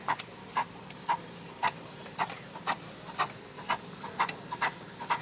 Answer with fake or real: real